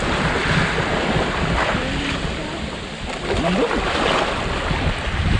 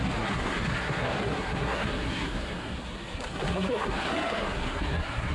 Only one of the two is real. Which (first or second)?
first